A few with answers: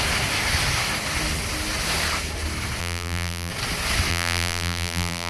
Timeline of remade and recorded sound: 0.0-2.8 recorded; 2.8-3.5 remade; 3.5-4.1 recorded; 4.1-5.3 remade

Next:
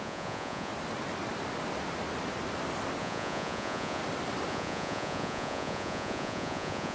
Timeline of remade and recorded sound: 0.0-0.7 remade; 0.7-3.0 recorded; 3.0-4.0 remade; 4.0-4.5 recorded; 4.5-6.9 remade